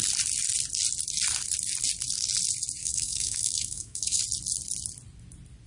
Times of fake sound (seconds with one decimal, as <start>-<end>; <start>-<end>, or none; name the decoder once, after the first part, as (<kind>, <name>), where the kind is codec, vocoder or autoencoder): 2.8-4.2 (autoencoder, DAC-VAE)